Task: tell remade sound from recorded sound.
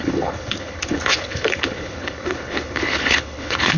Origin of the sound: remade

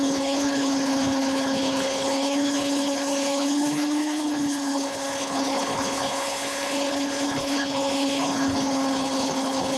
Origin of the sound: remade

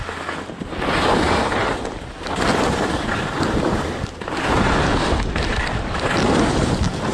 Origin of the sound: recorded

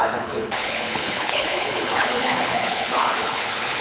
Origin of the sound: remade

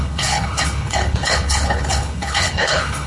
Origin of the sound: remade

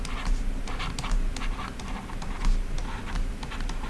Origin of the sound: recorded